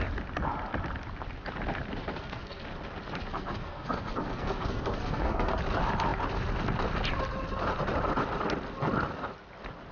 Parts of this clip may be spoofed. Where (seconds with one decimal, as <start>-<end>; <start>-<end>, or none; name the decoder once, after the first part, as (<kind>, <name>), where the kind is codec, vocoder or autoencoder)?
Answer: 2.0-2.6 (codec, SNAC); 3.2-5.6